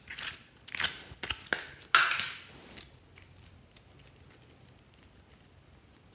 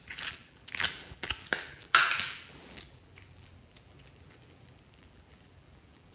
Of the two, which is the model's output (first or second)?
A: second